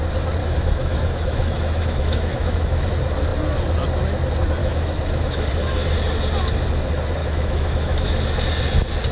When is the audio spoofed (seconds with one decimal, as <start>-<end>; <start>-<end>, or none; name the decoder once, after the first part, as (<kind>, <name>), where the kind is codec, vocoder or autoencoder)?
0.4-2.9 (autoencoder, DAC-VAE); 4.6-5.5; 7.2-8.4